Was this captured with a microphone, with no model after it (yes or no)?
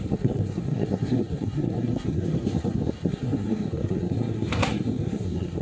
no